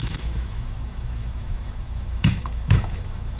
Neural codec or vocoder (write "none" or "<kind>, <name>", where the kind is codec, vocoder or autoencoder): autoencoder, DAC-VAE